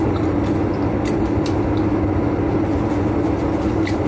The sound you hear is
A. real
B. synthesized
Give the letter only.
A